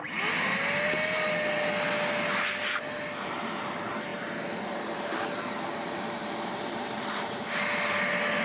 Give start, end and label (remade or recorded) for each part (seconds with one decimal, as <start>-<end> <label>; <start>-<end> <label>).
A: 0.0-8.4 recorded